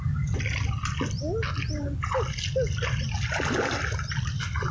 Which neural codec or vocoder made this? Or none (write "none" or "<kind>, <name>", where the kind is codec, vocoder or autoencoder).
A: none